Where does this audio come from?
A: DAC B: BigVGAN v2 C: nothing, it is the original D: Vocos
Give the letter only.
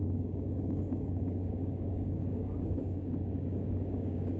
A